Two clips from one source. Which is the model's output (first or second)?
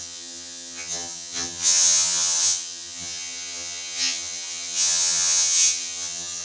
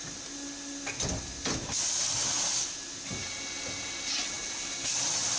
first